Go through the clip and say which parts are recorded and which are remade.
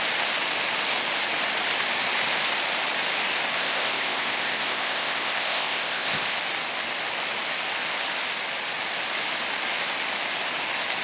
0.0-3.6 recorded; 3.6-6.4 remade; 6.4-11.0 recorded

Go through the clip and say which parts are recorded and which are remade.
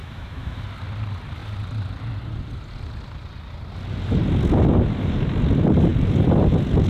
0.0-0.6 remade; 0.6-6.9 recorded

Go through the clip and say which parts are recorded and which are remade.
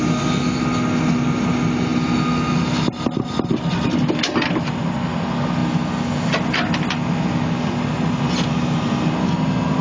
0.0-9.8 recorded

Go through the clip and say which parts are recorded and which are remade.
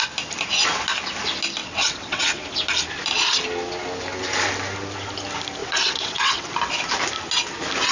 0.0-1.6 recorded; 1.6-2.2 remade; 2.2-5.6 recorded; 5.6-6.5 remade; 6.5-7.9 recorded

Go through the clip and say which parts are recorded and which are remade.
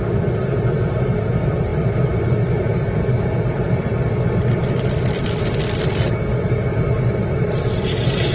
0.0-8.3 recorded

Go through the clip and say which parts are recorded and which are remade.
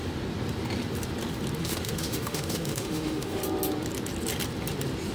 0.0-1.6 recorded; 1.6-3.4 remade; 3.4-5.1 recorded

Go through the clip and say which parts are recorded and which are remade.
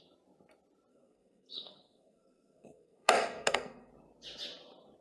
0.0-0.9 recorded; 0.9-3.9 remade; 3.9-5.0 recorded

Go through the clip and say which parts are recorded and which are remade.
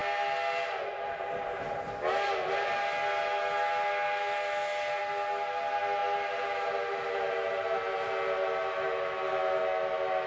0.0-10.3 recorded